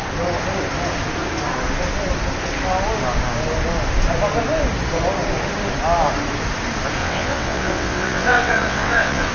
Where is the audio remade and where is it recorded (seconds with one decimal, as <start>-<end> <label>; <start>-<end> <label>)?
0.0-7.0 recorded; 7.0-9.3 remade